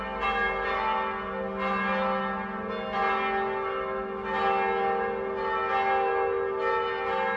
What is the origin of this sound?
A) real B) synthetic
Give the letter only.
A